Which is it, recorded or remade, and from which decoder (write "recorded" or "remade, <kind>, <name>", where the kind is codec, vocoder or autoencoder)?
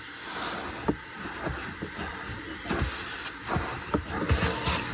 recorded